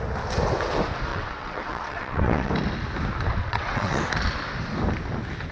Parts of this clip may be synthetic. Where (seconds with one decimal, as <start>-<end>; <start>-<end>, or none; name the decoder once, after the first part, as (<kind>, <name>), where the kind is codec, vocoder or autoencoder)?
1.1-2.5 (vocoder, WaveNeXt); 3.4-4.0